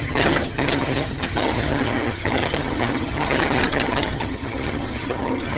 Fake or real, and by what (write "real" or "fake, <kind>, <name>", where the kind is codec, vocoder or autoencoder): fake, vocoder, HiFi-GAN